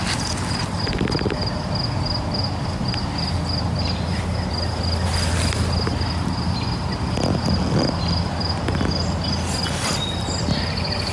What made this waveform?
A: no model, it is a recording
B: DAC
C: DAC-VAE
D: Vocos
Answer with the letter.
A